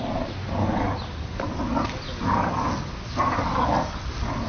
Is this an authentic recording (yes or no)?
yes